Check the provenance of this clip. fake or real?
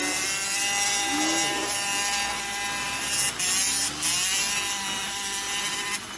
real